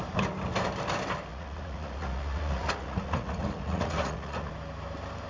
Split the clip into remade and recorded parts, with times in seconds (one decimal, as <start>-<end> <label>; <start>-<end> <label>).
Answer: 0.0-1.3 recorded; 1.3-4.5 remade; 4.5-5.3 recorded